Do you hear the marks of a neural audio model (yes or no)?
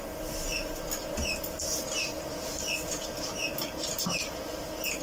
no